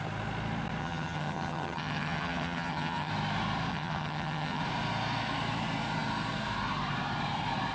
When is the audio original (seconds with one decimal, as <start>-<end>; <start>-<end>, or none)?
0.0-0.8; 3.1-3.7; 4.6-7.7